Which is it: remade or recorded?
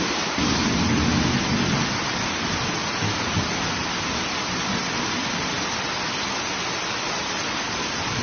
recorded